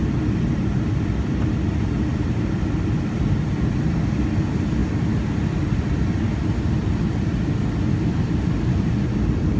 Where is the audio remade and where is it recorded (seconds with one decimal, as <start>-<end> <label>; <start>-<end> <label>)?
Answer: 0.0-9.6 recorded